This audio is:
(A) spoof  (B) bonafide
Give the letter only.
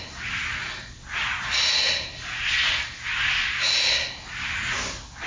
B